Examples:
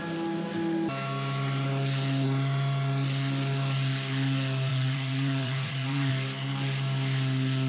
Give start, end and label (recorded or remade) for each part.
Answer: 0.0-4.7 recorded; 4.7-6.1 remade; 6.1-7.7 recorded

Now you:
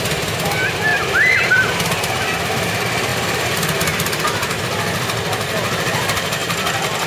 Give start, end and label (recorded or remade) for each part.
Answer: 0.0-6.4 recorded; 6.4-7.1 remade

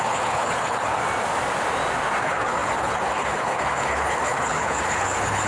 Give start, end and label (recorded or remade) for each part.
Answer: 0.0-1.0 remade; 1.0-2.2 recorded; 2.2-5.5 remade

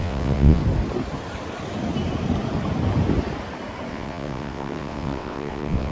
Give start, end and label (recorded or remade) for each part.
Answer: 0.0-0.6 remade; 0.6-3.9 recorded; 3.9-5.9 remade

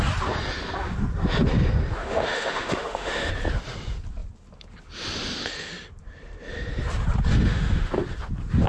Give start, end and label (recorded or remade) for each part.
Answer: 0.0-2.0 recorded; 2.0-3.3 remade; 3.3-7.3 recorded; 7.3-7.9 remade; 7.9-8.7 recorded

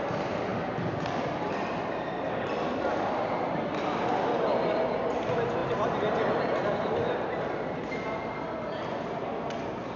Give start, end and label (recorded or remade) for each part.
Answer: 0.0-10.0 recorded